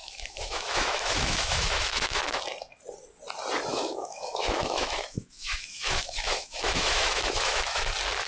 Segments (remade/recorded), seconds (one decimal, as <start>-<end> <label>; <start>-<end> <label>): 0.0-2.4 remade; 2.4-3.7 recorded; 3.7-7.9 remade; 7.9-8.3 recorded